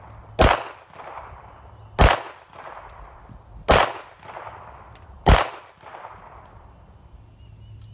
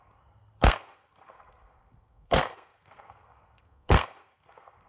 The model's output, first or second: second